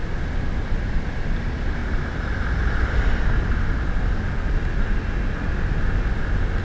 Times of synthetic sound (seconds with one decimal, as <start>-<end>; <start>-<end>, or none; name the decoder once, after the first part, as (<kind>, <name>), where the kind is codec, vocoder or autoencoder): none

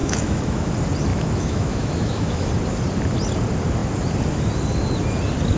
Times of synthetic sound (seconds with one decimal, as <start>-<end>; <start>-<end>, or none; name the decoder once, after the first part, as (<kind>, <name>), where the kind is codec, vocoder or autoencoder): 0.0-0.7 (autoencoder, DAC-VAE); 1.1-2.5

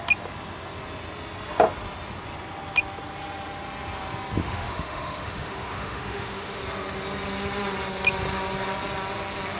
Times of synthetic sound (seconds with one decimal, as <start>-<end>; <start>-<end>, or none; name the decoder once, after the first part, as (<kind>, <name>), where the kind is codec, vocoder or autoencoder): 4.4-6.6 (autoencoder, DAC-VAE)

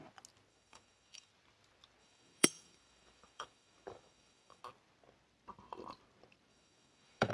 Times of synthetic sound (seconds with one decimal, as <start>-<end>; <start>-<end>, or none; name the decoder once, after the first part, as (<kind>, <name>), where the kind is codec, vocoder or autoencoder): 0.5-1.3 (autoencoder, DAC-VAE); 2.0-4.6; 6.5-7.3

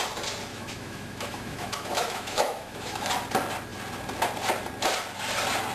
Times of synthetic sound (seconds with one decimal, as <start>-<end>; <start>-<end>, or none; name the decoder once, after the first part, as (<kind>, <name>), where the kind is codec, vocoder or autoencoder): 0.5-3.1 (autoencoder, DAC-VAE)

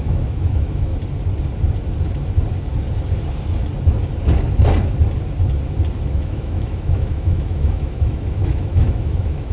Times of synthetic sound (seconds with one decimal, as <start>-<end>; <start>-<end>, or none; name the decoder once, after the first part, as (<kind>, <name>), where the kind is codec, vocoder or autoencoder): 0.0-0.9 (autoencoder, DAC-VAE); 6.1-9.5

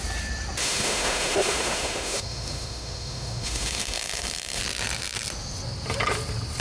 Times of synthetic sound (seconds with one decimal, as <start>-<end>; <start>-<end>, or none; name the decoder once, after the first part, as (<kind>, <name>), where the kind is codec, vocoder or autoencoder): 0.6-4.6 (autoencoder, DAC-VAE)